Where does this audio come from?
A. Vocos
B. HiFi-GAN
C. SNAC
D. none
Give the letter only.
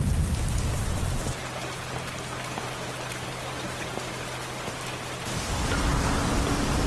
D